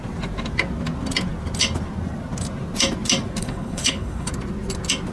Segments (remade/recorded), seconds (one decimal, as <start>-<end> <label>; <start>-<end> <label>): 0.0-3.4 recorded; 3.4-4.3 remade; 4.3-5.1 recorded